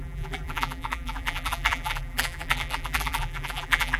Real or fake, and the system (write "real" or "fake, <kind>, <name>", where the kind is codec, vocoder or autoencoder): fake, vocoder, BigVGAN v2